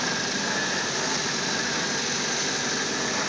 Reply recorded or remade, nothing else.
recorded